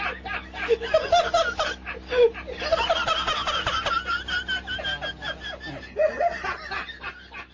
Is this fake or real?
real